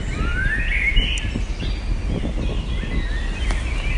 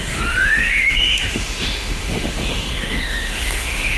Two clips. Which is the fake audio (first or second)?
second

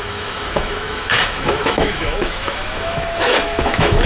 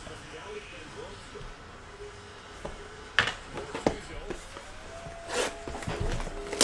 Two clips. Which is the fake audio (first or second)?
first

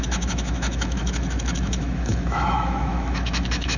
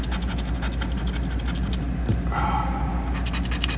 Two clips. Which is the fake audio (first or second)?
first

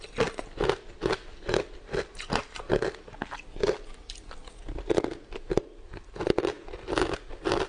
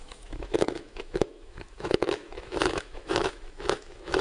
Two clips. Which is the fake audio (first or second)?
second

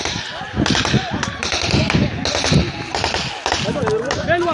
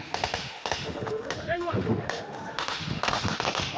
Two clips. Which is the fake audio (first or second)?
second